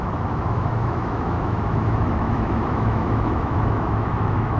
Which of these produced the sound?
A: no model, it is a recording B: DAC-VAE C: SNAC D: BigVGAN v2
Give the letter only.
B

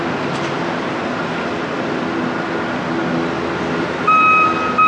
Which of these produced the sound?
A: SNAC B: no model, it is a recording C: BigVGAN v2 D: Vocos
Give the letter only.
B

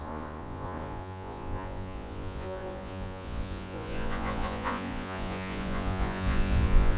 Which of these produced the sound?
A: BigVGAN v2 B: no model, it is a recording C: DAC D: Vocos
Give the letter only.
D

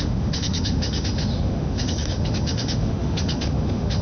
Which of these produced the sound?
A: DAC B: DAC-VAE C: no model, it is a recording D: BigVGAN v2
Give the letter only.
B